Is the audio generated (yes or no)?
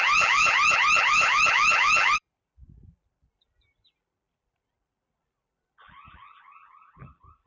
yes